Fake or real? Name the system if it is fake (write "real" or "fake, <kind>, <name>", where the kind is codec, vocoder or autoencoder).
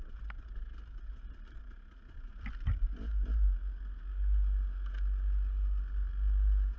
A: real